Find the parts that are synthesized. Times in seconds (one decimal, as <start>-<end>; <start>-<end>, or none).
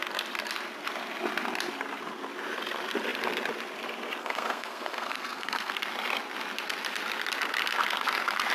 4.2-5.7